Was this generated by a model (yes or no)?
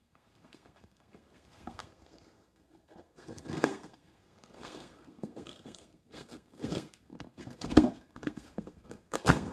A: yes